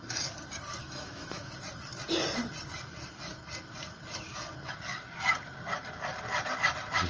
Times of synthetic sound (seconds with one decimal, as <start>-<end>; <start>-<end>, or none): 0.8-1.5